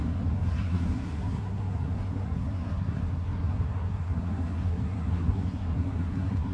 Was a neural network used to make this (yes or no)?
yes